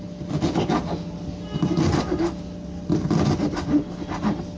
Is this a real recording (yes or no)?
yes